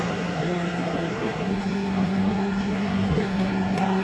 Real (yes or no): no